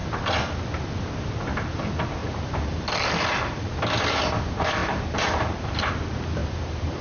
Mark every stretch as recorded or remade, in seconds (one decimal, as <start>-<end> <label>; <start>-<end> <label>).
0.0-2.2 recorded; 2.2-3.7 remade; 3.7-4.8 recorded; 4.8-5.9 remade; 5.9-6.4 recorded; 6.4-7.0 remade